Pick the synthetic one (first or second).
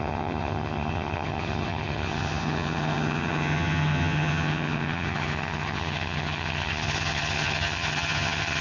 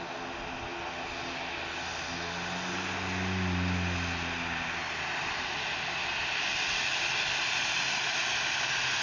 first